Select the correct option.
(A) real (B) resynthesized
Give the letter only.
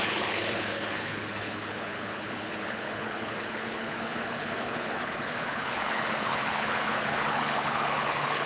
B